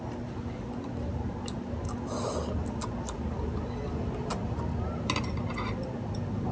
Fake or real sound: real